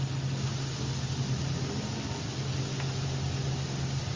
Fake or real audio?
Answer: real